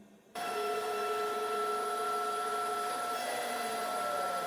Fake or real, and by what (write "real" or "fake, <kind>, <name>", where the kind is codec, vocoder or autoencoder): fake, vocoder, BigVGAN v2